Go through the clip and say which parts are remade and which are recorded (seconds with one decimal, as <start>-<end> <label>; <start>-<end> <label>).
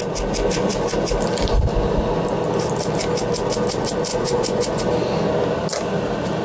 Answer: 0.0-4.1 recorded; 4.1-4.8 remade; 4.8-6.4 recorded